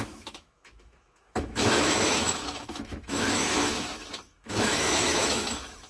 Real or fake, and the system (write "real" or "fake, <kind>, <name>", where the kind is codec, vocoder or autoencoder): fake, autoencoder, DAC-VAE